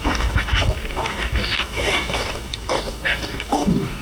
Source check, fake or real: fake